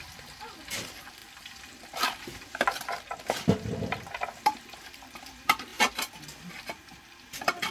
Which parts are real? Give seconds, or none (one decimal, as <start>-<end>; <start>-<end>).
none